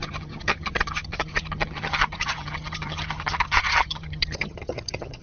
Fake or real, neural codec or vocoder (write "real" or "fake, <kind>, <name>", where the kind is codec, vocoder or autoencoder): fake, vocoder, HiFi-GAN